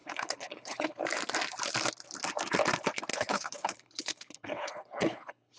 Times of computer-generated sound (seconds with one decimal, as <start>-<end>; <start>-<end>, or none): 0.0-1.0; 3.1-5.6